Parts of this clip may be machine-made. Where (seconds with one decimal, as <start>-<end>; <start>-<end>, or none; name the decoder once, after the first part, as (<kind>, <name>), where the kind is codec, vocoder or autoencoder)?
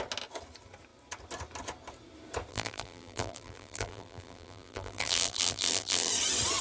2.5-6.1 (vocoder, BigVGAN v2)